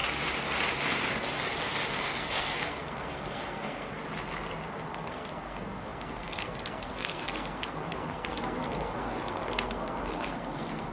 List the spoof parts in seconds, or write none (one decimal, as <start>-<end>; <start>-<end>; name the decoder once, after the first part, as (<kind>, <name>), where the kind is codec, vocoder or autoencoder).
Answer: 1.9-4.0 (codec, SNAC); 4.9-10.9